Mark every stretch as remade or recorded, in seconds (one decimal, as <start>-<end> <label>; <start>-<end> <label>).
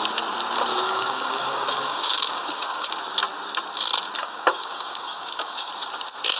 0.0-0.7 recorded; 0.7-2.9 remade; 2.9-4.2 recorded; 4.2-5.7 remade; 5.7-6.4 recorded